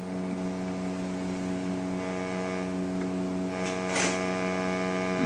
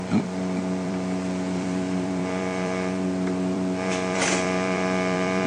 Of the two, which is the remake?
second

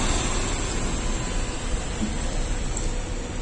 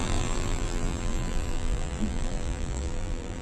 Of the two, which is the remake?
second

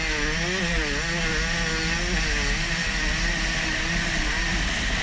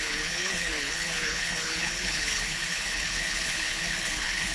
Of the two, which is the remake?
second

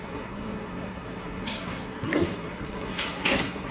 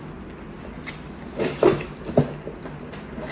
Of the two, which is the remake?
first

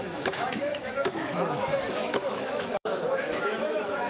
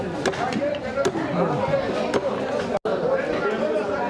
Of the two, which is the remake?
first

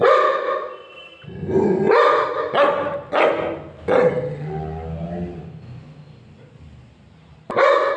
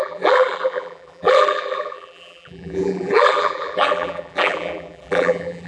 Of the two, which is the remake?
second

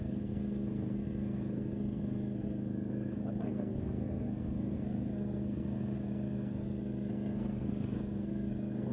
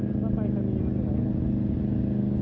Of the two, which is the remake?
first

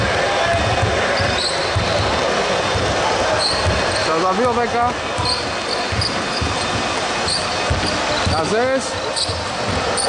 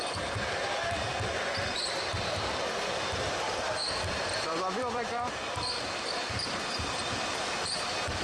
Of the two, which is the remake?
second